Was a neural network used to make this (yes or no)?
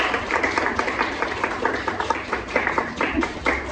yes